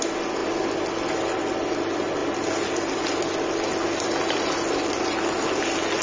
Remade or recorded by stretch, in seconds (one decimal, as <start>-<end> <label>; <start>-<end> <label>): 0.0-6.0 recorded